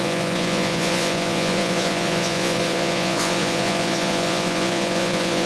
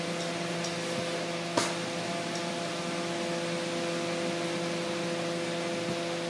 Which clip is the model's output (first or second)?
first